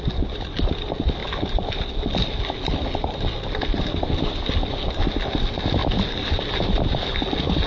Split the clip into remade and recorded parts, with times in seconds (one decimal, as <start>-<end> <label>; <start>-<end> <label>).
0.0-7.7 recorded

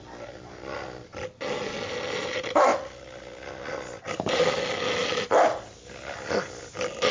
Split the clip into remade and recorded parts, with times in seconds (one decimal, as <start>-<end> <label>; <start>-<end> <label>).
0.0-7.1 recorded

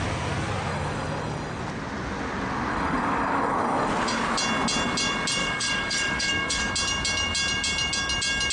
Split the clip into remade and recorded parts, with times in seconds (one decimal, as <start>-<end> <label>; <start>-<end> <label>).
0.0-0.7 recorded; 0.7-1.6 remade; 1.6-2.7 recorded; 2.7-3.9 remade; 3.9-5.4 recorded; 5.4-6.7 remade; 6.7-8.5 recorded

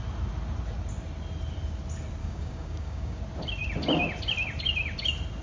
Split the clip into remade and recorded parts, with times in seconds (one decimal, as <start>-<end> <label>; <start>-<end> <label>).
0.0-2.2 recorded; 2.2-3.2 remade; 3.2-5.4 recorded

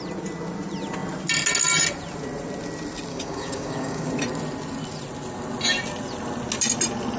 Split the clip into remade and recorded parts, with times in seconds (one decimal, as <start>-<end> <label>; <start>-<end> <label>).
0.0-3.1 recorded; 3.1-4.1 remade; 4.1-7.2 recorded

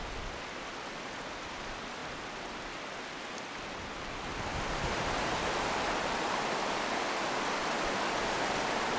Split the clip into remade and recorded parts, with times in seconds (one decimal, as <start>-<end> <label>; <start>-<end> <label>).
0.0-9.0 recorded